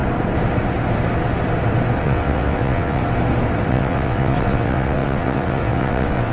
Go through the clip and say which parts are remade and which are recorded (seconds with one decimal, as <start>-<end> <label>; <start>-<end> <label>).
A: 0.0-2.0 recorded; 2.0-3.0 remade; 3.0-3.7 recorded; 3.7-6.3 remade